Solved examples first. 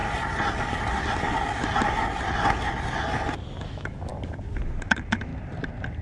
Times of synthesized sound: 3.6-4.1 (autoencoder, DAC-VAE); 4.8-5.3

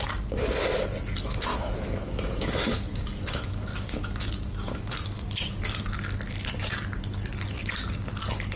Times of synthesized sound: 1.5-4.9 (autoencoder, DAC-VAE)

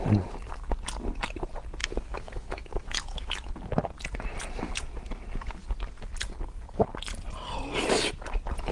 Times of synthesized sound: 1.8-3.5 (autoencoder, DAC-VAE)

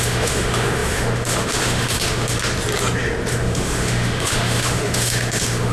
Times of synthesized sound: 0.0-2.5 (autoencoder, DAC-VAE); 3.3-5.7